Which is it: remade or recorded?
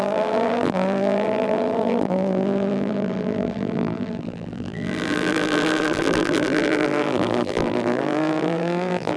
remade